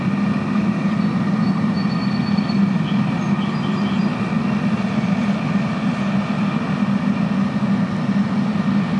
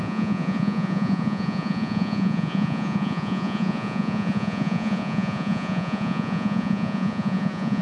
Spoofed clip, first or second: second